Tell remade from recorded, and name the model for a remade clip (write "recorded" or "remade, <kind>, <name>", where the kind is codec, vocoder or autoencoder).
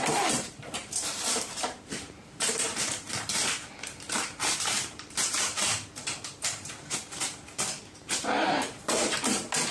remade, vocoder, BigVGAN v2